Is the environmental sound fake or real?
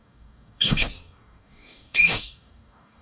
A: fake